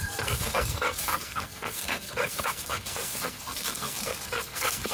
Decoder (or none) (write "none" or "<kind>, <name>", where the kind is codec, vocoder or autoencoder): codec, SNAC